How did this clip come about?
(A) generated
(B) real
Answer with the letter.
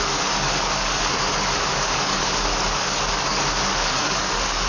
A